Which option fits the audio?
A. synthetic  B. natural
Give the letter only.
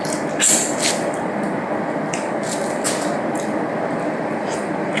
A